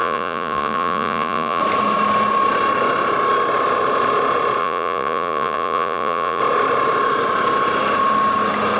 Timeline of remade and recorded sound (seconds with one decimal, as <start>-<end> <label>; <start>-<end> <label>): 0.0-1.6 remade; 1.6-4.6 recorded; 4.6-6.4 remade; 6.4-8.8 recorded